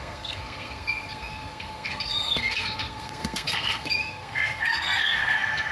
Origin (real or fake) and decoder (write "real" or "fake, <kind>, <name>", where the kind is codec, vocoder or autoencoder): fake, codec, SNAC